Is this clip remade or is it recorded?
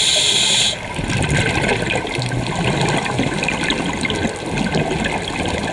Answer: recorded